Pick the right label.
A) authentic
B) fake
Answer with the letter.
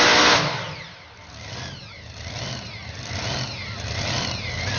A